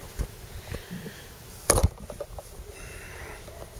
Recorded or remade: recorded